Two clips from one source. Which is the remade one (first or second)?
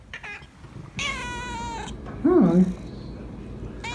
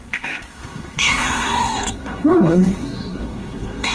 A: second